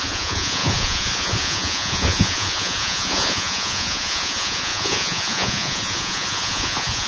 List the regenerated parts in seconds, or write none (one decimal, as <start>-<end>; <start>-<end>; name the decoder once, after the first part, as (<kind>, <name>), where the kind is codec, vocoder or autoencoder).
0.0-7.1 (vocoder, Vocos)